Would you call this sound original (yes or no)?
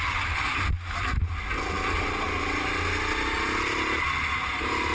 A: yes